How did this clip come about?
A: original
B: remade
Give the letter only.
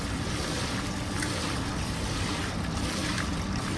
A